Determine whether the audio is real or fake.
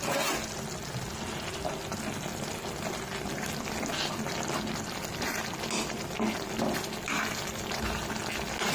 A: real